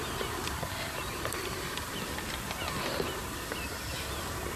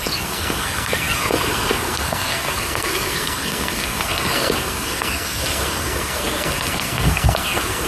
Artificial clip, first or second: second